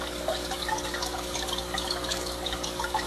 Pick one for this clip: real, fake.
fake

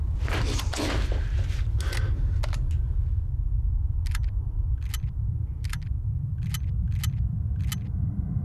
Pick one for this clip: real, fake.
real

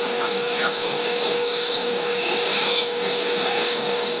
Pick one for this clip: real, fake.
fake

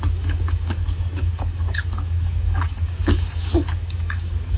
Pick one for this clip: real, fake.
fake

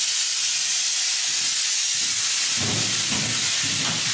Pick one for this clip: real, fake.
real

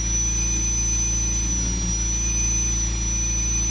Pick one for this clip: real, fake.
real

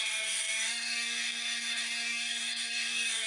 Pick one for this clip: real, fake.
fake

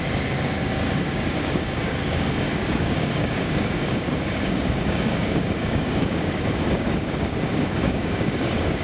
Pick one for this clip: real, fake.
fake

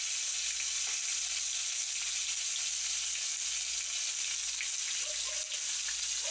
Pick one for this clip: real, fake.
real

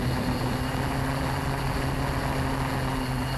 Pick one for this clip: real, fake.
real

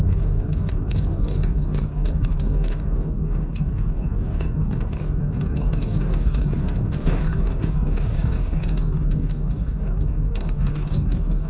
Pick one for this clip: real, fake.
fake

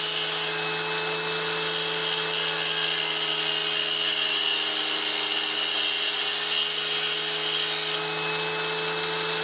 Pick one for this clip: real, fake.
real